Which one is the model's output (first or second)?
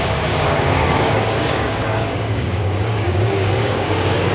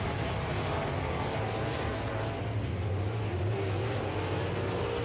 first